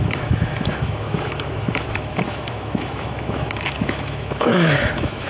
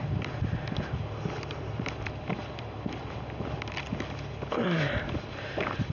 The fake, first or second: first